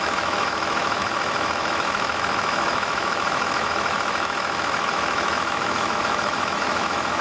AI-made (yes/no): yes